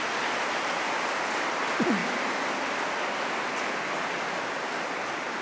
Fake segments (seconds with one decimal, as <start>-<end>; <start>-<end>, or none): none